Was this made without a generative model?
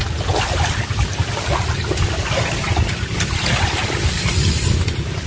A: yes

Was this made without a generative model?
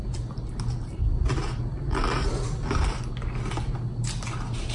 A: yes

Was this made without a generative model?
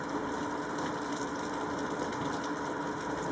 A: yes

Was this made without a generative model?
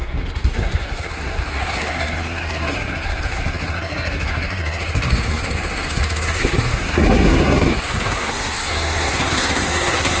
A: no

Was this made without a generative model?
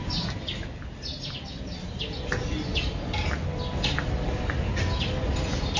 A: yes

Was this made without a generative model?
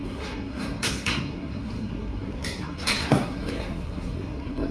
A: no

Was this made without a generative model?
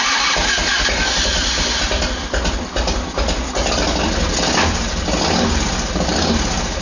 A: yes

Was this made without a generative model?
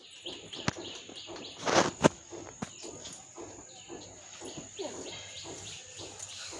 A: yes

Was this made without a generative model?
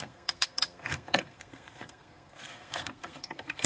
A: no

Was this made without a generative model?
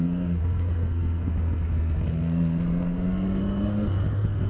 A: no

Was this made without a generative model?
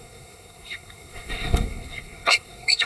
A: no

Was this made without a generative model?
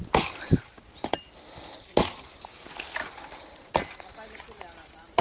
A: yes